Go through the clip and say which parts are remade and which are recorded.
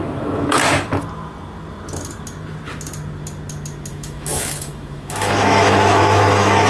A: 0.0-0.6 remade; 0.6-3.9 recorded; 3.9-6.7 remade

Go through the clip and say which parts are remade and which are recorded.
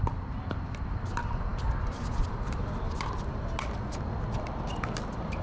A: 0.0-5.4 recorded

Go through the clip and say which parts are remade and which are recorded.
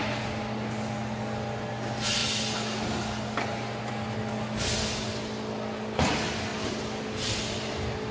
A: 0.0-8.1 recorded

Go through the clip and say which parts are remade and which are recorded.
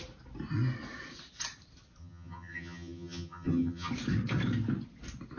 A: 0.0-2.0 recorded; 2.0-3.9 remade; 3.9-5.4 recorded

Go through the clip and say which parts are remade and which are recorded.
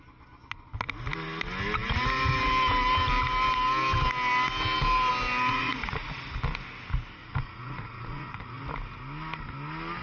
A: 0.0-5.5 recorded; 5.5-6.0 remade; 6.0-7.2 recorded; 7.2-8.7 remade; 8.7-10.0 recorded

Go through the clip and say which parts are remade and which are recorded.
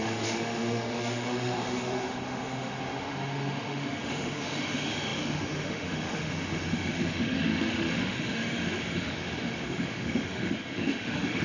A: 0.0-11.4 remade